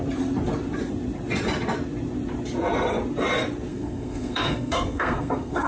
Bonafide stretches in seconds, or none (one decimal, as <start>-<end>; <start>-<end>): 0.0-3.7